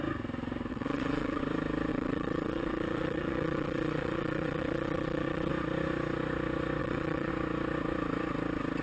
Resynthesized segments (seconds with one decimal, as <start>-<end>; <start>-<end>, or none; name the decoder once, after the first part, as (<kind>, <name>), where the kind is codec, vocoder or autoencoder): 0.7-1.4 (vocoder, WaveNeXt); 1.9-5.5; 6.8-7.3